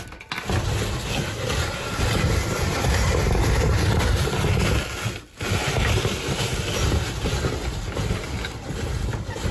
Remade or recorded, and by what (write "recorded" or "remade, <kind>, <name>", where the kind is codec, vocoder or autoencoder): recorded